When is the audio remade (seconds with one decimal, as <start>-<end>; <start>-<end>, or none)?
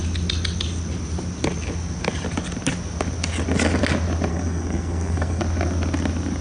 4.3-5.4